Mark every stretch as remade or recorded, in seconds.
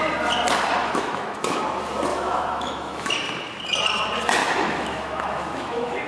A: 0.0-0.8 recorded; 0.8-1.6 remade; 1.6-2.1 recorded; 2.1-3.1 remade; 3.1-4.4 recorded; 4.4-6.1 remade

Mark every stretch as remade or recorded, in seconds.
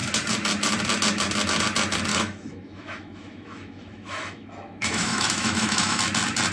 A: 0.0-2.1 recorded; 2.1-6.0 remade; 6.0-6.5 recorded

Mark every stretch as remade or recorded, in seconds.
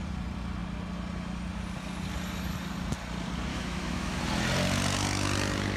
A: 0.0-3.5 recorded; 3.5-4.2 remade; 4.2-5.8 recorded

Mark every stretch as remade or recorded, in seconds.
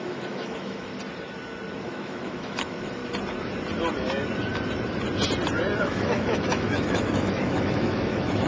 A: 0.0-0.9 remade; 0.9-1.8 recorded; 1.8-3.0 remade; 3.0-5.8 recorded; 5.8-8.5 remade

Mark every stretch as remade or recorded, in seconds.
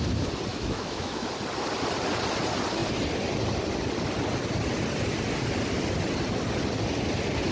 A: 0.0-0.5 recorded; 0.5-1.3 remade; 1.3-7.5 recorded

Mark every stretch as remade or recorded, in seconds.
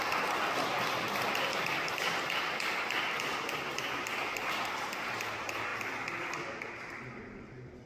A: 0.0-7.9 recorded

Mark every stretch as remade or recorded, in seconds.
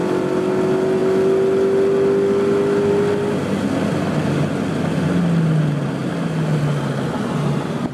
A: 0.0-7.9 recorded